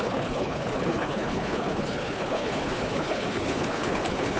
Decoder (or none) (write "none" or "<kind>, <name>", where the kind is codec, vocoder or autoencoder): codec, HILCodec